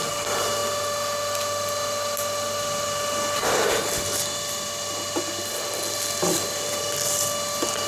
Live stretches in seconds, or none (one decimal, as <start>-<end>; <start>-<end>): 0.0-7.9